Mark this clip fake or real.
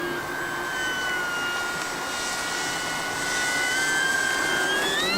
real